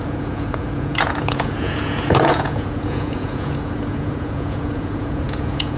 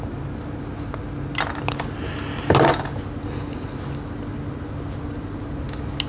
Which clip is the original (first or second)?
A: second